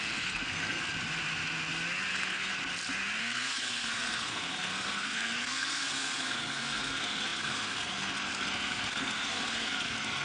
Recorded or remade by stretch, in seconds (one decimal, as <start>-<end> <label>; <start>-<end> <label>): 0.0-0.8 remade; 0.8-2.1 recorded; 2.1-2.5 remade; 2.5-3.2 recorded; 3.2-10.2 remade